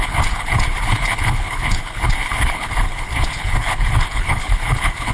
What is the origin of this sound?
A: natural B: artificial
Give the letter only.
B